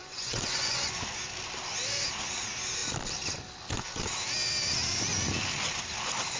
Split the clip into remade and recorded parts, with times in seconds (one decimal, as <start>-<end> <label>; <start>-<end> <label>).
0.0-1.0 remade; 1.0-6.4 recorded